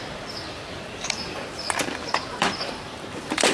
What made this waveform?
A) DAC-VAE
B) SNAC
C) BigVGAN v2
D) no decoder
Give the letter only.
C